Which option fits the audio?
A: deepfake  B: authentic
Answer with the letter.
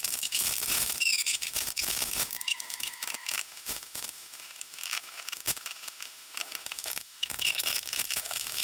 A